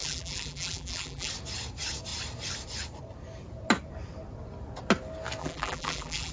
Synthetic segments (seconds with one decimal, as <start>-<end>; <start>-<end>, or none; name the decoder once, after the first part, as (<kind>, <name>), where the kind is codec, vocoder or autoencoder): 0.0-1.3 (vocoder, BigVGAN v2); 5.4-6.3